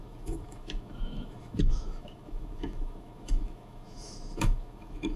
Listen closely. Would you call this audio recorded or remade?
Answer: remade